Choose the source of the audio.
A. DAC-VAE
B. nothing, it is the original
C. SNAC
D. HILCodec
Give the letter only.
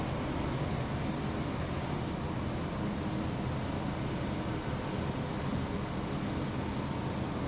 B